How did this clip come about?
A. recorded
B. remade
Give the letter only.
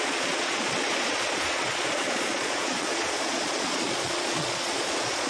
B